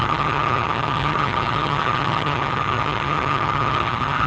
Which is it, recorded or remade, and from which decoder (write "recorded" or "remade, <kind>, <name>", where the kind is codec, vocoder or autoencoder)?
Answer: remade, vocoder, HiFi-GAN